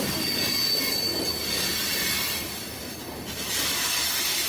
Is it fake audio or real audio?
real